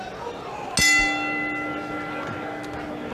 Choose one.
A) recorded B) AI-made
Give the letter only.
A